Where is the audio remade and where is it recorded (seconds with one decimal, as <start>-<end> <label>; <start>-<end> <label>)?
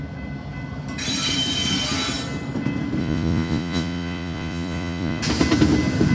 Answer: 0.0-3.0 recorded; 3.0-5.2 remade; 5.2-6.1 recorded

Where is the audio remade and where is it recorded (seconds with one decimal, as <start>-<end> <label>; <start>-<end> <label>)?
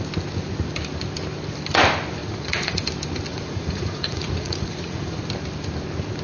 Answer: 0.0-2.2 recorded; 2.2-2.8 remade; 2.8-3.3 recorded; 3.3-5.2 remade; 5.2-6.2 recorded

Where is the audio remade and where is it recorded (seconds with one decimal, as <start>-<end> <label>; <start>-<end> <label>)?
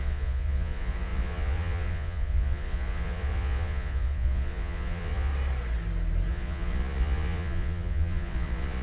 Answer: 0.0-5.3 remade; 5.3-6.3 recorded; 6.3-8.8 remade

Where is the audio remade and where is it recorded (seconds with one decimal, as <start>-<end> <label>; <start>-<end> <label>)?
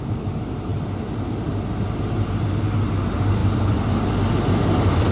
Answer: 0.0-5.1 recorded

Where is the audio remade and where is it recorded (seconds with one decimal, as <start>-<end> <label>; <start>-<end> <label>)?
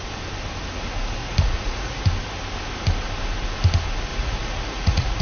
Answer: 0.0-1.2 recorded; 1.2-2.0 remade; 2.0-4.1 recorded; 4.1-5.2 remade